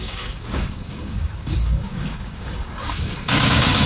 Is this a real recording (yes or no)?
no